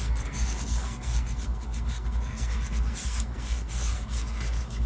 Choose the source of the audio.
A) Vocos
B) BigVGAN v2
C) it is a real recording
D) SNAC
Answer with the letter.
D